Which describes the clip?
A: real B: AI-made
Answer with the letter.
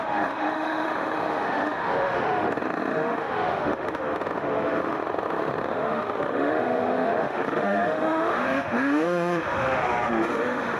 B